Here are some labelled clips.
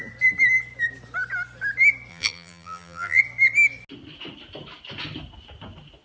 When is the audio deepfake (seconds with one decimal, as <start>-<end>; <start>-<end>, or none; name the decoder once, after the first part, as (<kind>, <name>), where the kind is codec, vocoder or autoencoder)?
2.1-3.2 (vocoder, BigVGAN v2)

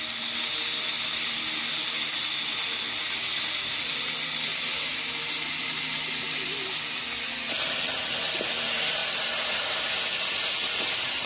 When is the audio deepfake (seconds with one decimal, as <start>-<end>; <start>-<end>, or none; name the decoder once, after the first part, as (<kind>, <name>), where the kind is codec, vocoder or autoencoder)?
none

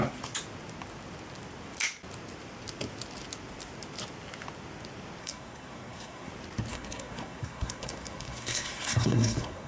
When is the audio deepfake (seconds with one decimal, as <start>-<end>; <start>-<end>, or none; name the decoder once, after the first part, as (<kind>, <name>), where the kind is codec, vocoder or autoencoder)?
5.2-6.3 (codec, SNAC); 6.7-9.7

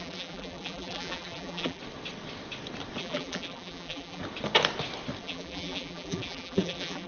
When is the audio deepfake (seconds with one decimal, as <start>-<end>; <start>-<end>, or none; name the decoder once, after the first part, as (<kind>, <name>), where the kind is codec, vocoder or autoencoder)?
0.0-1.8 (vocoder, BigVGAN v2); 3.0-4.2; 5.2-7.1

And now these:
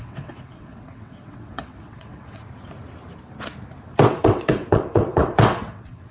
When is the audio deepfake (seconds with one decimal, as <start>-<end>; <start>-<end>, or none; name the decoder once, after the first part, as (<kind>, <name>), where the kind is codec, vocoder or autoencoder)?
0.0-2.4 (vocoder, WaveNeXt); 4.1-6.1

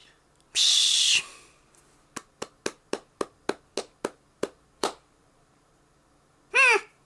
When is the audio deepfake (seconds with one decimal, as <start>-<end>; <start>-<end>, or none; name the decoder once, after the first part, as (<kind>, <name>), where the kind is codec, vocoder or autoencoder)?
4.8-5.6 (vocoder, BigVGAN v2)